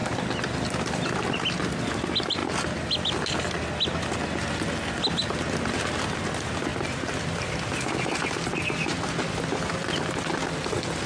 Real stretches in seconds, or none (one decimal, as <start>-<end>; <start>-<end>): 0.0-11.1